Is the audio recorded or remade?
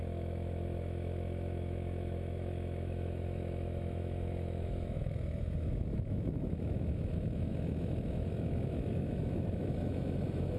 remade